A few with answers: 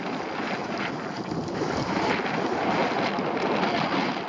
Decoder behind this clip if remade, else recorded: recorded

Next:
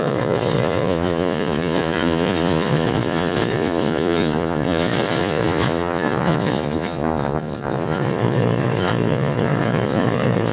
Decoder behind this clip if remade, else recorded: remade, vocoder, Vocos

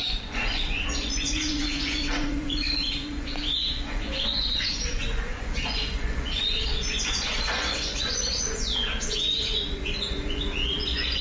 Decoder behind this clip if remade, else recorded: remade, vocoder, Vocos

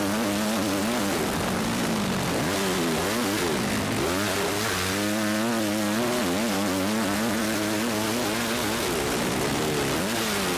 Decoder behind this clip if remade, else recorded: recorded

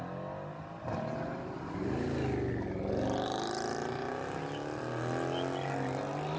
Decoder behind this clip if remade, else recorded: recorded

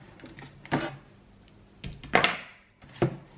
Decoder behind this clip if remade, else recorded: recorded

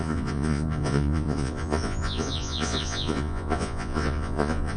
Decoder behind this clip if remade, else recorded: remade, vocoder, Vocos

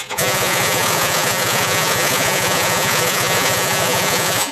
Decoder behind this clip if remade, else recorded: remade, vocoder, Vocos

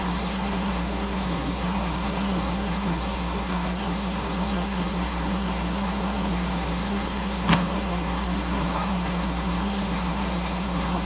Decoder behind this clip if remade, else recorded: remade, codec, SNAC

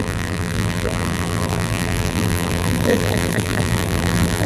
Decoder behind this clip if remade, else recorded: remade, vocoder, BigVGAN v2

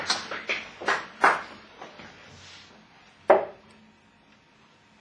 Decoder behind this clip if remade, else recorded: recorded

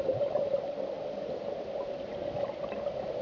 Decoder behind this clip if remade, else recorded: recorded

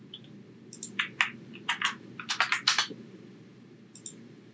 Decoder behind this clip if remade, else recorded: recorded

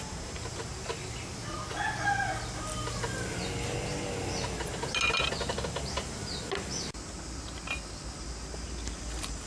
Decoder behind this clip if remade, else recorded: recorded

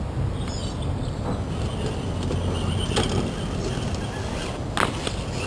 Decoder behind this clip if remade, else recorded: recorded